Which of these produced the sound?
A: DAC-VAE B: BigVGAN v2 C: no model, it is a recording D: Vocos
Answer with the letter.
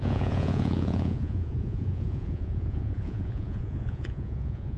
D